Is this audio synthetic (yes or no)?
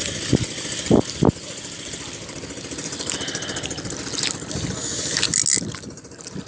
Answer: no